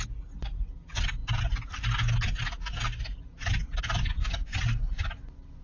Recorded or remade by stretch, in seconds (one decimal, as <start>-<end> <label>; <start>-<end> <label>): 0.0-5.6 recorded